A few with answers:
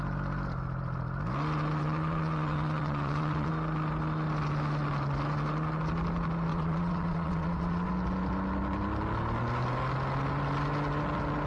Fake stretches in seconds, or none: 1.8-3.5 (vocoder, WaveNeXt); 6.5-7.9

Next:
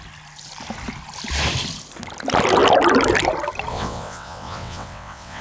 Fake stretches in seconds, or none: 3.7-5.4 (vocoder, WaveNeXt)

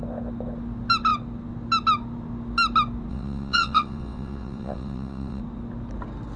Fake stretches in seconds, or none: 3.1-5.4 (vocoder, WaveNeXt)

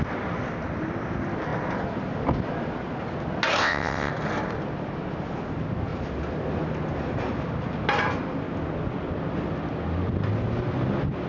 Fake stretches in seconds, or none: 3.6-4.1 (vocoder, WaveNeXt)